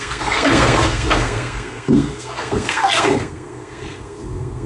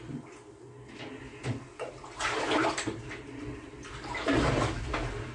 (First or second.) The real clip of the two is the second